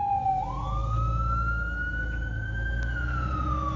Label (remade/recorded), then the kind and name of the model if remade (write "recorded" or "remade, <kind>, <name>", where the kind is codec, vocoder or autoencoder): recorded